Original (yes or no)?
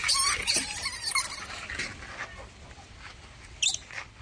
yes